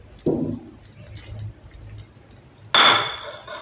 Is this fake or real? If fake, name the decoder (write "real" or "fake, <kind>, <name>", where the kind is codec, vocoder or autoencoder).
real